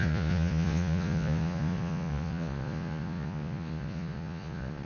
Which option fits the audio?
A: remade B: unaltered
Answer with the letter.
A